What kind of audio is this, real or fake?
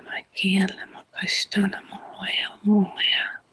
fake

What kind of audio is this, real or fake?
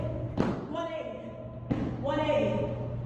real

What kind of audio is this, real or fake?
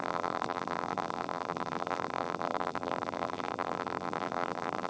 fake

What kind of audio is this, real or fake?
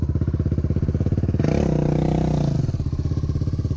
real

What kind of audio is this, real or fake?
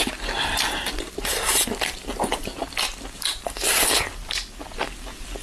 real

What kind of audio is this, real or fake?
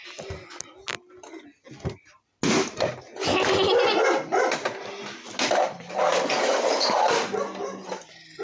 real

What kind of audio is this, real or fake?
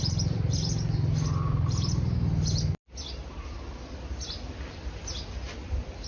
real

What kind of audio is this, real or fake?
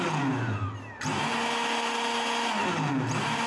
real